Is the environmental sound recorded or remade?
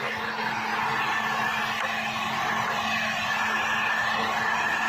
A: recorded